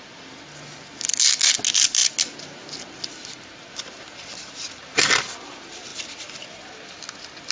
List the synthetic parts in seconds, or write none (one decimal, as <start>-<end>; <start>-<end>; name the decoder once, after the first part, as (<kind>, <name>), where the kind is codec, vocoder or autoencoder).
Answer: none